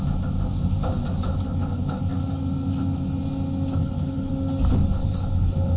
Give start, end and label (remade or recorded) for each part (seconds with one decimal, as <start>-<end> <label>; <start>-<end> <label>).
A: 0.0-1.3 recorded; 1.3-2.0 remade; 2.0-3.8 recorded; 3.8-4.3 remade; 4.3-5.0 recorded; 5.0-5.8 remade